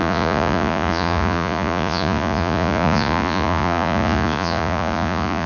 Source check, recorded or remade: remade